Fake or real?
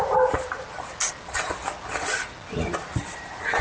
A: real